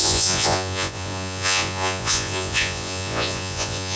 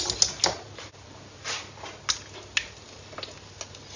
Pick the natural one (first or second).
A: second